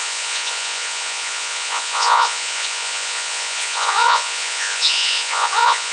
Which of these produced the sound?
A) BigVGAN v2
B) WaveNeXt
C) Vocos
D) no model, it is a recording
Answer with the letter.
C